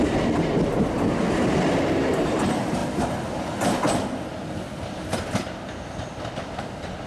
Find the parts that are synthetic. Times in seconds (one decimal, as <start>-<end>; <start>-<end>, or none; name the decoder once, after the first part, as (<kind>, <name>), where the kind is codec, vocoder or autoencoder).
none